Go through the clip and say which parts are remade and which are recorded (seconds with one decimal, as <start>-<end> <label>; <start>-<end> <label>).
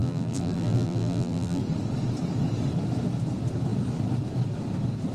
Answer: 0.0-1.6 remade; 1.6-5.1 recorded